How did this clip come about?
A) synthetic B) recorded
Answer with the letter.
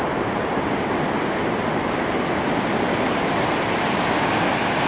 B